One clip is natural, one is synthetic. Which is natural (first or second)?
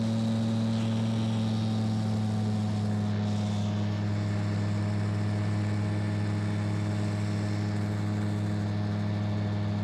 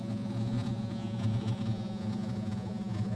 first